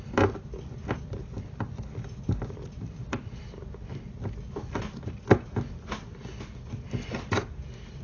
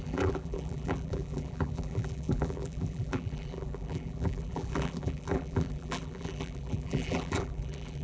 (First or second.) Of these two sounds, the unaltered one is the first